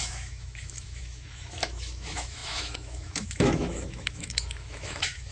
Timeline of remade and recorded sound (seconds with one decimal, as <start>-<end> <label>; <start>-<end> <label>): 0.0-5.3 remade